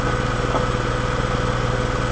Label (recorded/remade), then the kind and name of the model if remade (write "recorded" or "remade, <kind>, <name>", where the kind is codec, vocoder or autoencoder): recorded